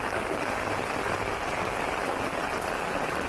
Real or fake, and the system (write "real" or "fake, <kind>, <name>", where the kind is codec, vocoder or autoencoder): real